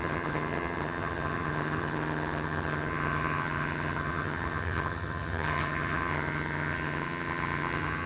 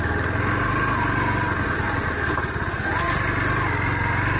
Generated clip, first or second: first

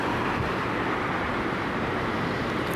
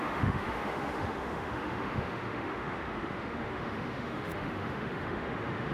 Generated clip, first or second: second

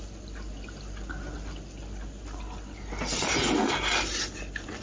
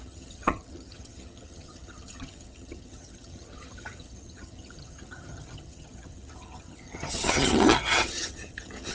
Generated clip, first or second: second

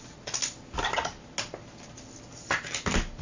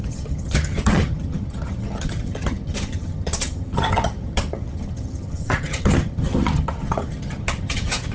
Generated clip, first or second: second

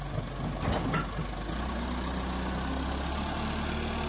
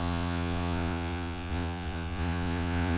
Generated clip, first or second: second